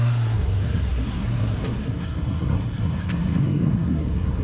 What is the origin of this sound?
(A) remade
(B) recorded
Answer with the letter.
A